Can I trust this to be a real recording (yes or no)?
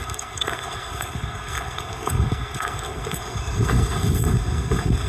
no